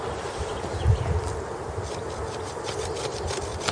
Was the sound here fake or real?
real